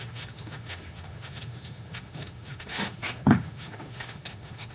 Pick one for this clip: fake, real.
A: fake